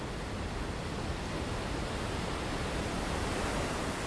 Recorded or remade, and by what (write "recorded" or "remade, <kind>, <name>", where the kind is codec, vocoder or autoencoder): recorded